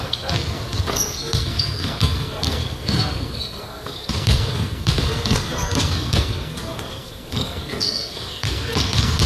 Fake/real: fake